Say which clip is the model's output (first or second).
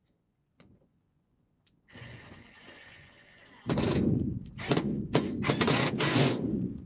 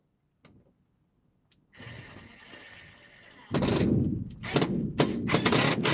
first